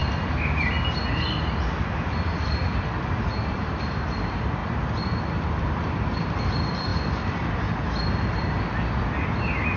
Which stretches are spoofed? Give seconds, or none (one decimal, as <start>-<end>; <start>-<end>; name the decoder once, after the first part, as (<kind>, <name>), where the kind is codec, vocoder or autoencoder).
1.8-4.6 (vocoder, BigVGAN v2); 5.2-6.9